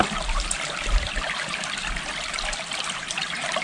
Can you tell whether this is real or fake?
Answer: fake